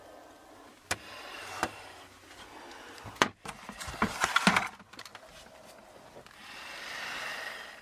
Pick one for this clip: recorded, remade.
recorded